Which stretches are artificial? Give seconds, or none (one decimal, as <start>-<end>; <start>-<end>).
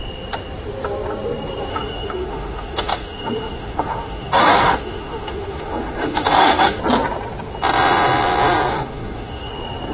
1.7-6.8; 8.7-9.5